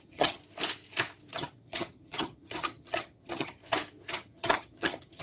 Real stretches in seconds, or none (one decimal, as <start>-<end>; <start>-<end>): 0.4-1.3; 3.6-4.1